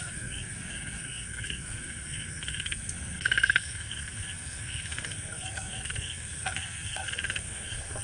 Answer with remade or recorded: remade